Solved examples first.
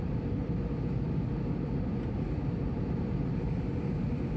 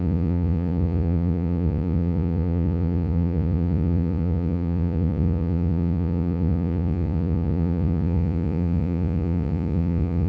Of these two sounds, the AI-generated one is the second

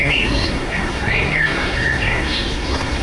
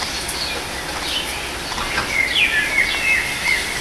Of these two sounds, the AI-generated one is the first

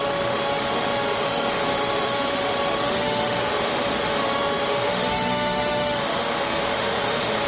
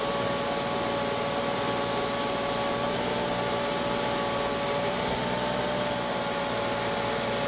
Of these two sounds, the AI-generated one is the first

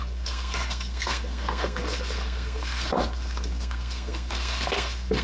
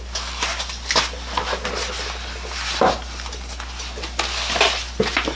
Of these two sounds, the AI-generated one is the first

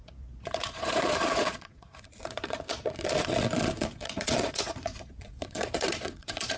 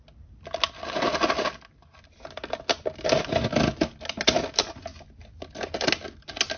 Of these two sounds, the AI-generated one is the first